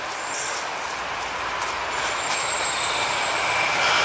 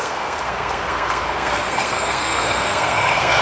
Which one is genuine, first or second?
first